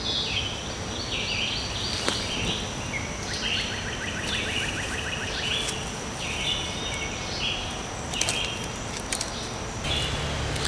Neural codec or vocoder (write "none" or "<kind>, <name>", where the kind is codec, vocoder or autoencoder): none